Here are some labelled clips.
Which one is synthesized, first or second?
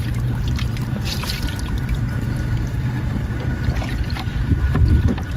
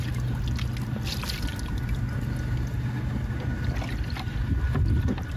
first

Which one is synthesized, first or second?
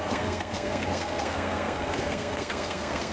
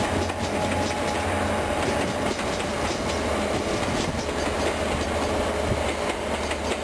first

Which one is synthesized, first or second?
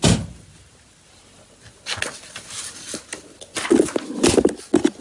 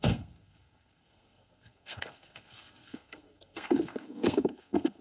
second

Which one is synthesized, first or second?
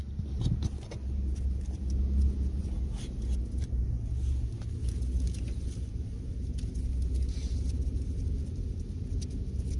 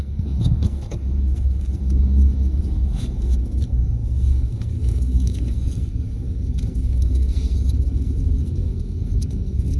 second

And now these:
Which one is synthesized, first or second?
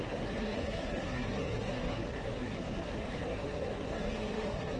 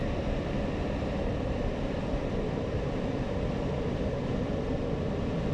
first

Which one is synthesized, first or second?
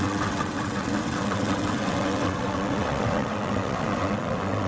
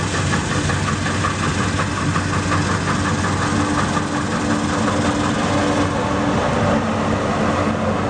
first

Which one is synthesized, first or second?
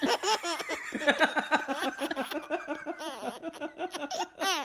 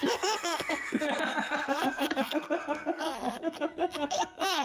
second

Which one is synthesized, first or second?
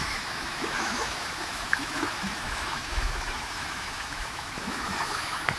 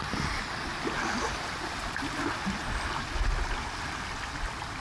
first